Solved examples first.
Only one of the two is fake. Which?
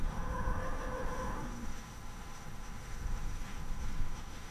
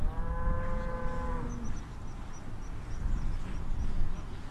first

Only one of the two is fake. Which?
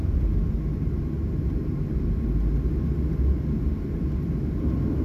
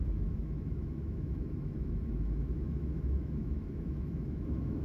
second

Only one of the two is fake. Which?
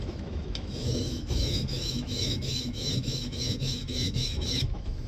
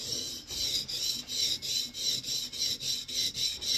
first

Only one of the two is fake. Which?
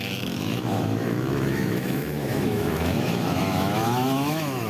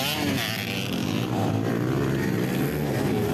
first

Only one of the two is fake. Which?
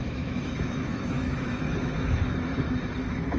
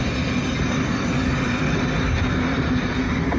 first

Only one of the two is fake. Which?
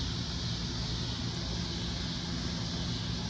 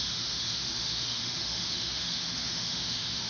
second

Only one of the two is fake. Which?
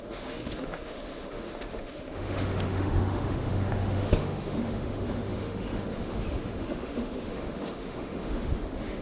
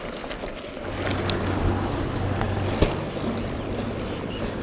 first